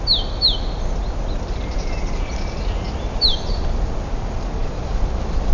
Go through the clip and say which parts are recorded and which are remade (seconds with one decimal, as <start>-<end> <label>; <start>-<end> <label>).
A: 0.0-4.6 recorded; 4.6-5.5 remade